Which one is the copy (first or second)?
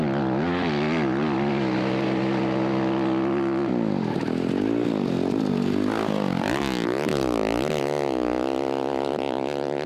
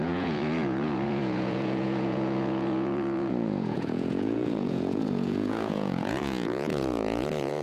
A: second